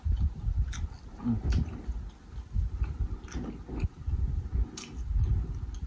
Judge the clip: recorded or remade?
recorded